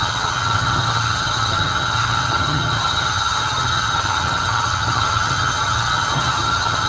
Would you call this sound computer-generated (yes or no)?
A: yes